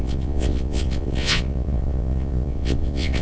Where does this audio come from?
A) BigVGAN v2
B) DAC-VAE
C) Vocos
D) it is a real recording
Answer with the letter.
C